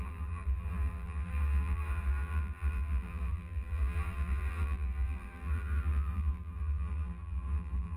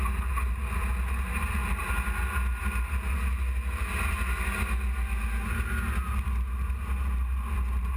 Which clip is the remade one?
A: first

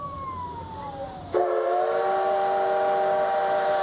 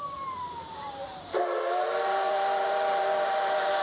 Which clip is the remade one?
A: second